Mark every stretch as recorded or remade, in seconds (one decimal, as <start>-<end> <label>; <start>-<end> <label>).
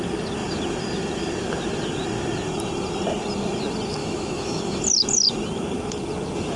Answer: 0.0-4.0 recorded; 4.0-4.8 remade; 4.8-6.6 recorded